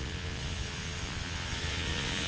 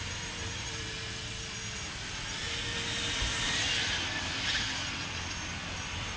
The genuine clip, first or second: second